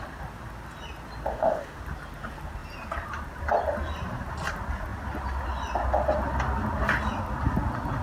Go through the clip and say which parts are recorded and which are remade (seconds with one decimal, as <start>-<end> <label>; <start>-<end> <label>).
0.0-1.3 recorded; 1.3-1.8 remade; 1.8-8.0 recorded